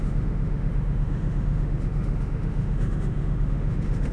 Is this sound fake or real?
fake